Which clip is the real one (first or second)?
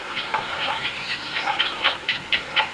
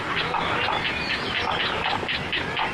second